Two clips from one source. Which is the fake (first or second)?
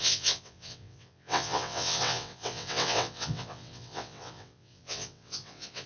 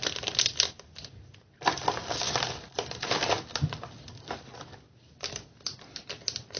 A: first